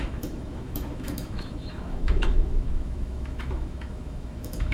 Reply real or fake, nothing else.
fake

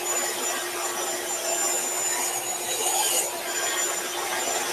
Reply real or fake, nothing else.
real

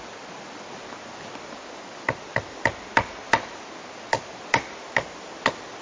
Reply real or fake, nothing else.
real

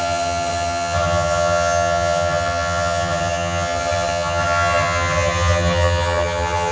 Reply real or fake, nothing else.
fake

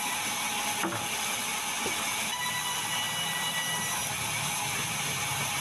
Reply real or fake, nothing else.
real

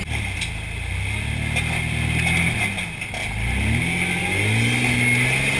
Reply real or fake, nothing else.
real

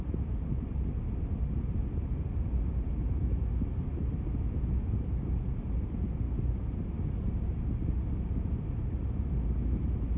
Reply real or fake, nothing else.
real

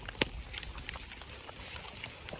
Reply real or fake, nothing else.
real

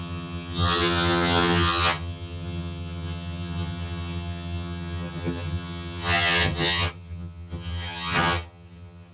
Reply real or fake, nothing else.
fake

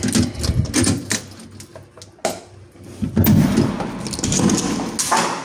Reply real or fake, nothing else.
real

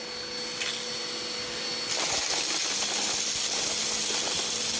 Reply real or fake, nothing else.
real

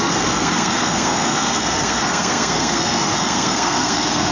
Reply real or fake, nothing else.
fake